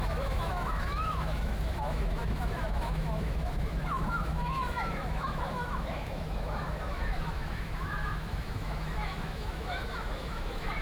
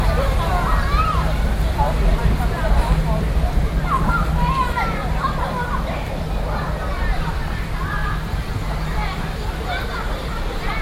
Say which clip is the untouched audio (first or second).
second